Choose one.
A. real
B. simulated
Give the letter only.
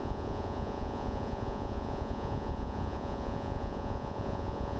B